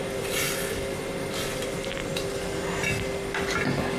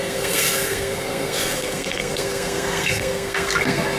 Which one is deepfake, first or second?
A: second